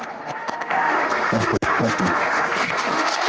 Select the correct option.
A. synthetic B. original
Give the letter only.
A